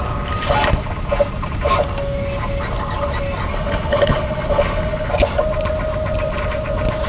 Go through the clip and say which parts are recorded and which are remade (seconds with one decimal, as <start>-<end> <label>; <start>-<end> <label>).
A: 0.0-3.5 recorded; 3.5-5.1 remade; 5.1-7.1 recorded